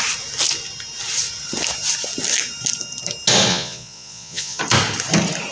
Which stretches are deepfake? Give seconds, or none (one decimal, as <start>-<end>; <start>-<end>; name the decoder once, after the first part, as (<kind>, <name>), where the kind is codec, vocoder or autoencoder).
3.5-4.6 (vocoder, Vocos)